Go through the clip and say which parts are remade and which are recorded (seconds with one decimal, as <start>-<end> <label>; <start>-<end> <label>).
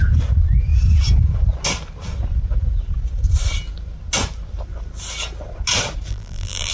0.0-6.1 recorded; 6.1-6.7 remade